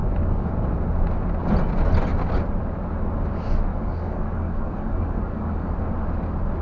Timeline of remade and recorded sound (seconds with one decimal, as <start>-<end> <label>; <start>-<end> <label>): 0.0-0.5 remade; 0.5-3.7 recorded; 3.7-5.8 remade; 5.8-6.6 recorded